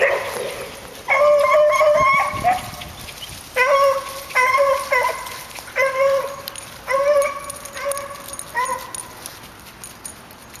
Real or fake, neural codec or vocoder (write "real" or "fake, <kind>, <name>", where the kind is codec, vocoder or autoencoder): real